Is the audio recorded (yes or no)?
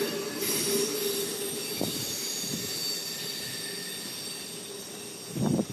yes